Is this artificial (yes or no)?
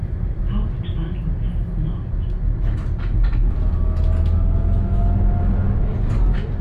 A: no